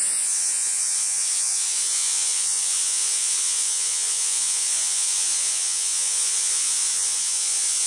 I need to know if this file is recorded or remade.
remade